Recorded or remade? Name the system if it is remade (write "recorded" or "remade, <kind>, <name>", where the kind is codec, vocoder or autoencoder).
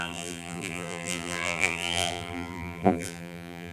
remade, vocoder, BigVGAN v2